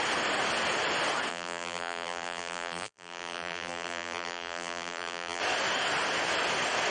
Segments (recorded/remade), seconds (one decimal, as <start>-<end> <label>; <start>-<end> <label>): 0.0-1.3 recorded; 1.3-5.4 remade; 5.4-6.9 recorded